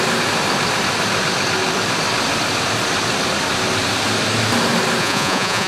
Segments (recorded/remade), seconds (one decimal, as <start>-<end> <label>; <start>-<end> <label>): 0.0-5.0 recorded; 5.0-5.7 remade